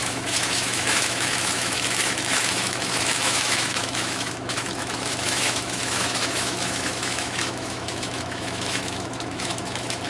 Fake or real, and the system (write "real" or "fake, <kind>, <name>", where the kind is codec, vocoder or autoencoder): fake, autoencoder, DAC-VAE